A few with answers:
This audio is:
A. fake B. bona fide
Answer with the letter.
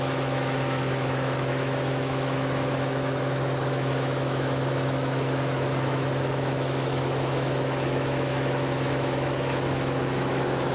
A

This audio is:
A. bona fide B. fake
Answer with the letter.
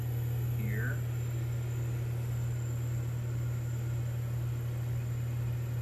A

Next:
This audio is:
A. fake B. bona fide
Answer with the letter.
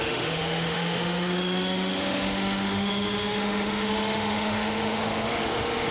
A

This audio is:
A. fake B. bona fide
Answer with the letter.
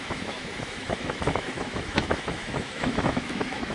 A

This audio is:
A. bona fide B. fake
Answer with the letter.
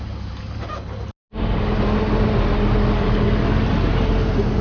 A